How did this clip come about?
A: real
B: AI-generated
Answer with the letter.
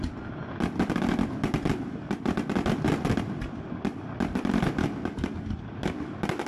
A